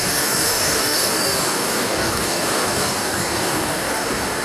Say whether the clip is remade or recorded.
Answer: remade